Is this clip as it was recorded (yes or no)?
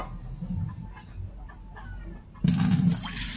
yes